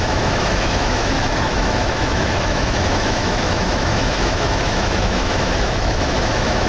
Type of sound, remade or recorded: remade